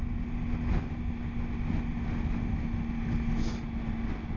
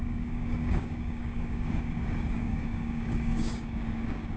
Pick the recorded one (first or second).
first